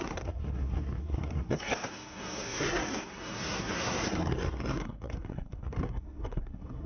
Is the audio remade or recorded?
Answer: remade